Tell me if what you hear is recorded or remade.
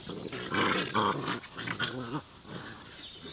recorded